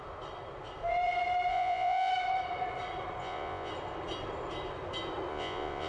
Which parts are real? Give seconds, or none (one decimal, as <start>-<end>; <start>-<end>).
0.0-1.5; 2.1-3.2; 3.7-5.3